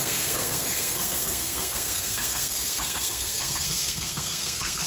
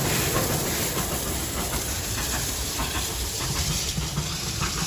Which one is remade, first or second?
first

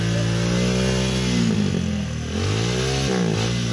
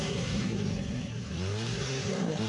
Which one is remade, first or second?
second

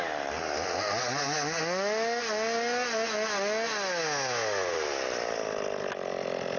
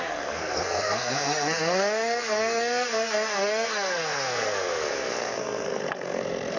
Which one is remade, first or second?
second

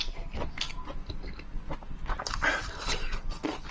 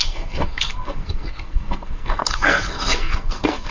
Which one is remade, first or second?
second